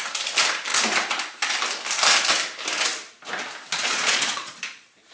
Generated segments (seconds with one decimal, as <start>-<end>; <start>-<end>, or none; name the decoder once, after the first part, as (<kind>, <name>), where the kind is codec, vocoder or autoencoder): 3.7-5.1 (vocoder, Vocos)